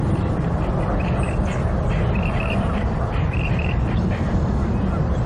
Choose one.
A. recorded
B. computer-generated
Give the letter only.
B